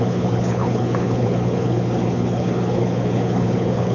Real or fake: fake